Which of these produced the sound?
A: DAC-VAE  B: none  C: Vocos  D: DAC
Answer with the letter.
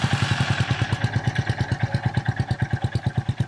B